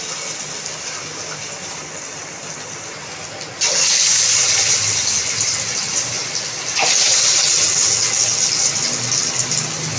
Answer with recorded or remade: recorded